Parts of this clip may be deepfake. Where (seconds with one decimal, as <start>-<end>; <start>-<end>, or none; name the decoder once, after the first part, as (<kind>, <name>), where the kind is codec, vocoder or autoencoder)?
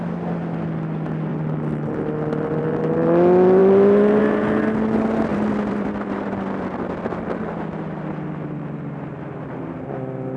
5.3-6.6 (vocoder, BigVGAN v2)